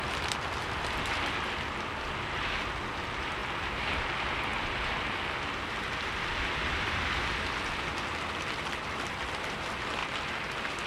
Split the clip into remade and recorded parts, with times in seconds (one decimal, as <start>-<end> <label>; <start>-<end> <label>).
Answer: 0.0-10.9 recorded